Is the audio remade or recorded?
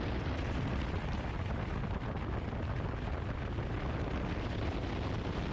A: recorded